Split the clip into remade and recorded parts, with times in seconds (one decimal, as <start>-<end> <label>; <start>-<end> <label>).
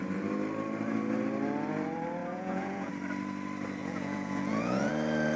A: 0.0-2.2 recorded; 2.2-2.9 remade; 2.9-3.8 recorded; 3.8-4.9 remade; 4.9-5.4 recorded